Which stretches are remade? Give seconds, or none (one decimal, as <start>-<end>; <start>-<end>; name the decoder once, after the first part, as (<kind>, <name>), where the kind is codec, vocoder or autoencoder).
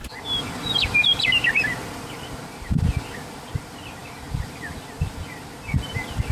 none